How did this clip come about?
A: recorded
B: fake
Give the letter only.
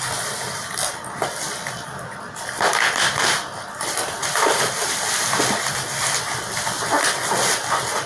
A